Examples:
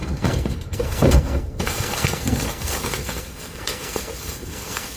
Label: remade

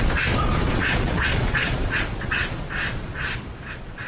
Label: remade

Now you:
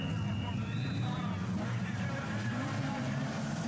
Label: remade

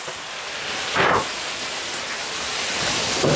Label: recorded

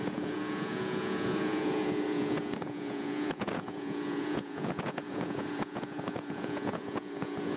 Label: remade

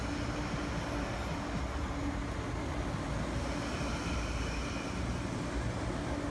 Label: recorded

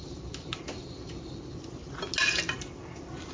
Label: recorded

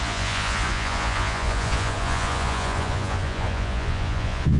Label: remade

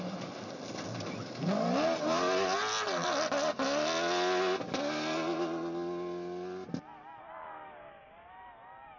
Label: recorded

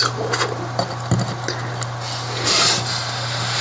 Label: recorded